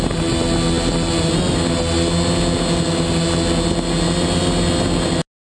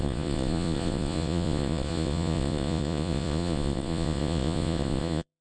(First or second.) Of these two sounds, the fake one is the second